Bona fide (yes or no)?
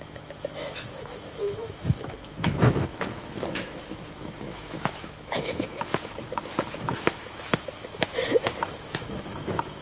no